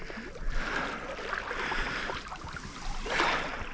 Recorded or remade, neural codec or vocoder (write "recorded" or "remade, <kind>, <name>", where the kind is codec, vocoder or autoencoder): recorded